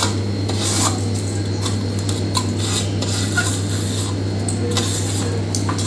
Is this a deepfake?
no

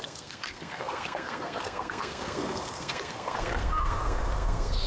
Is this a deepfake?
yes